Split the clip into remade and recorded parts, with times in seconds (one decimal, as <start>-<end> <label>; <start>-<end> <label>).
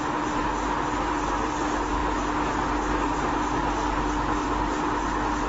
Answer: 0.0-5.5 recorded